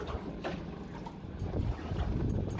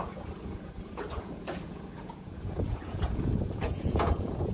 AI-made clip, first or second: second